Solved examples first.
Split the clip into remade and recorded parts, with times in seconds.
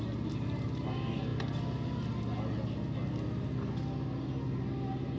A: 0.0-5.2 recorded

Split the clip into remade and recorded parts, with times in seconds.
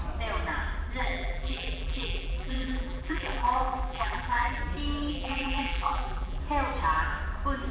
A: 0.0-1.0 recorded; 1.0-4.6 remade; 4.6-5.1 recorded; 5.1-6.4 remade; 6.4-7.7 recorded